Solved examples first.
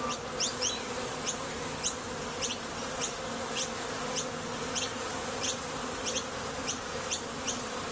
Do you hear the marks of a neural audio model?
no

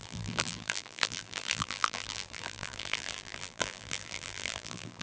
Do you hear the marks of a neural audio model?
yes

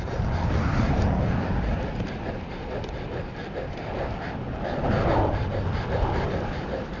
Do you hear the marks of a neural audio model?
yes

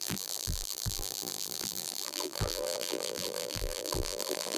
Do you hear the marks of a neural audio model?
yes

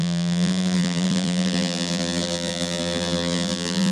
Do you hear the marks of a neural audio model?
yes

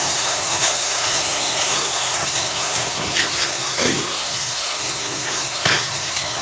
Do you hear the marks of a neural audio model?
yes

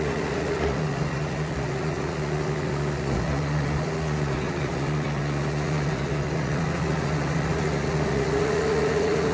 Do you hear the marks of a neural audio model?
yes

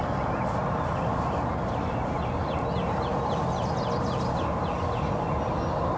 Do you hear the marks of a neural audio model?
no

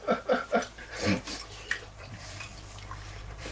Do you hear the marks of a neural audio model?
yes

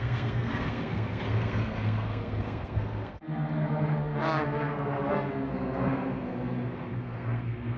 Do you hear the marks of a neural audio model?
yes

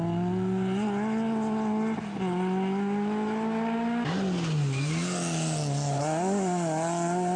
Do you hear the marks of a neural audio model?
no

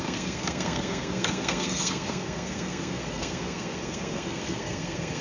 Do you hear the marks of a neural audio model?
yes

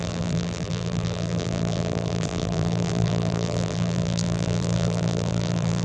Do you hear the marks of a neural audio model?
yes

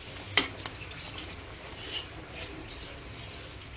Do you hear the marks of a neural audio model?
no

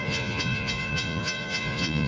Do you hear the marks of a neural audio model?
yes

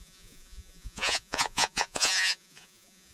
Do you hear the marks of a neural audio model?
yes